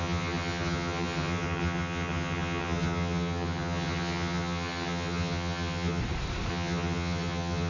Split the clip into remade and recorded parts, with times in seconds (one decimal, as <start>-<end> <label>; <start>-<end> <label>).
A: 0.0-6.0 remade; 6.0-6.5 recorded; 6.5-7.7 remade